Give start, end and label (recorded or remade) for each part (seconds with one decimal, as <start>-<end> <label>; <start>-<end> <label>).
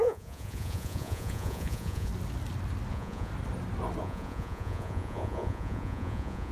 0.0-2.1 remade; 2.1-2.9 recorded; 2.9-3.3 remade; 3.3-4.0 recorded; 4.0-6.5 remade